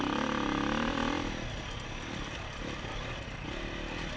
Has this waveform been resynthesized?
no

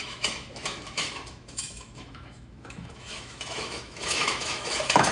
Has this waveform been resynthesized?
yes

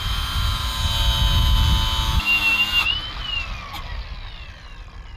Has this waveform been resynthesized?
no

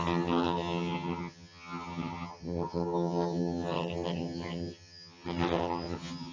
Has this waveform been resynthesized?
yes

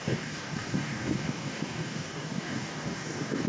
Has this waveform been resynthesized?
yes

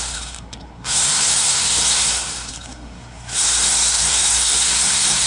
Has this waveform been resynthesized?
yes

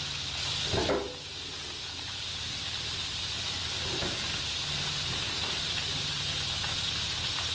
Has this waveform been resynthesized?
no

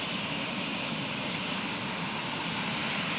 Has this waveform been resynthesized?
no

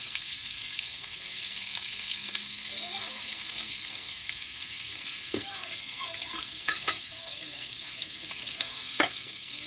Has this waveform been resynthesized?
yes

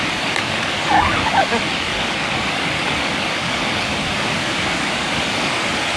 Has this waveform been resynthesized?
yes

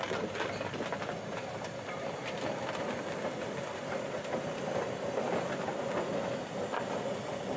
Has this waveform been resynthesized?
no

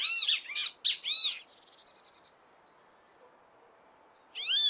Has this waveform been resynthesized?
no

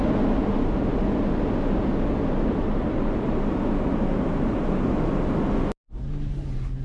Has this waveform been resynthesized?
no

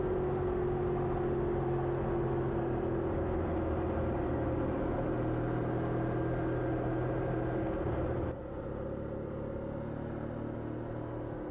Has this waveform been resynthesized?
no